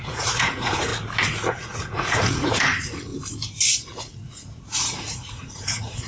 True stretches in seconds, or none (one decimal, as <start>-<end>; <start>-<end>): 0.9-1.5; 3.1-3.7